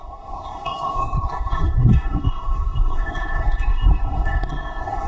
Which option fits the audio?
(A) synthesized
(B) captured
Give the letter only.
A